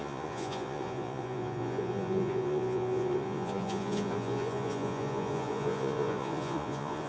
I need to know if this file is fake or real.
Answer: fake